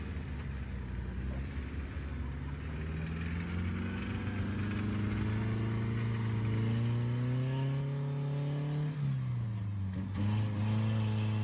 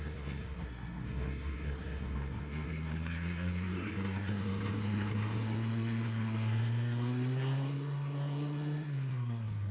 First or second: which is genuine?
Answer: first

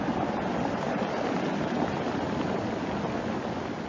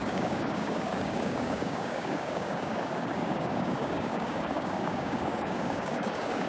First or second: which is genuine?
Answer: first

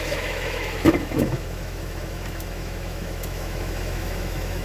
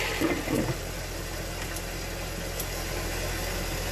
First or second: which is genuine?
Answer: second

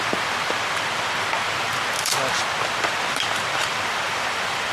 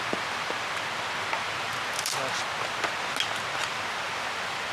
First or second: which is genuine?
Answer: second